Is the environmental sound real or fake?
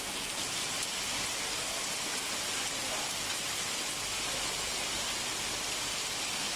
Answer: real